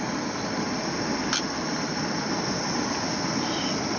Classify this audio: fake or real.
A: real